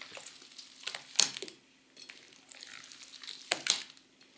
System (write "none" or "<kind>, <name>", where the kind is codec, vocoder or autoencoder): none